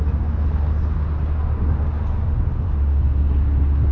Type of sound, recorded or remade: recorded